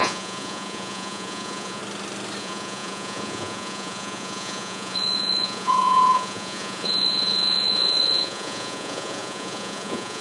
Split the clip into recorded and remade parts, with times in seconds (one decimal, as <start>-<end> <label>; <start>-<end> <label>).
0.0-1.8 remade; 1.8-2.4 recorded; 2.4-10.2 remade